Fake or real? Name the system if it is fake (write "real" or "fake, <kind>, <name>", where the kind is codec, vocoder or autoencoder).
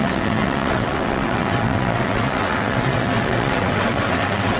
fake, vocoder, WaveNeXt